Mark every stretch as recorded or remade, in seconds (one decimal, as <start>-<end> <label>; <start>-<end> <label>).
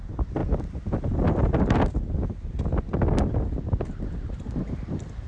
0.0-5.3 recorded